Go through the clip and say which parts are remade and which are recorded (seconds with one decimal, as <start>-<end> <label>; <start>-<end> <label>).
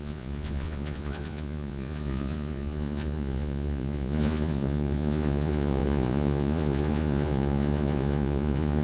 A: 0.0-8.8 remade